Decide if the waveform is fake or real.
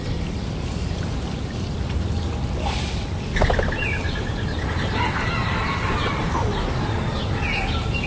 real